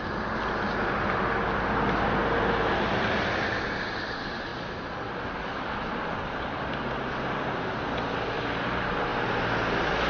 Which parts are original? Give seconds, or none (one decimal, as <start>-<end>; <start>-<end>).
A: 0.0-10.1